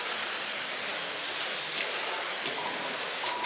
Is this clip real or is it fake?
real